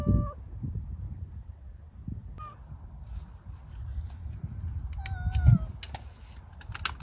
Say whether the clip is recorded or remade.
recorded